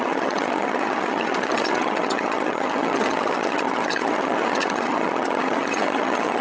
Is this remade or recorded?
remade